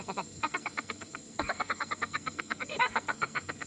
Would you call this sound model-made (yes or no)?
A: yes